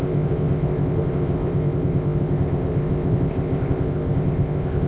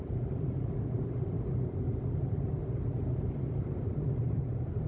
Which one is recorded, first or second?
second